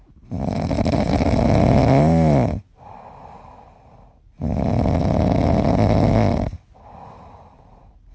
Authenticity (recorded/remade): recorded